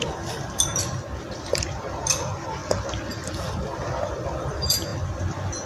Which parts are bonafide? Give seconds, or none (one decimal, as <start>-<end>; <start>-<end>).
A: 0.7-1.3; 2.6-4.1; 4.9-5.7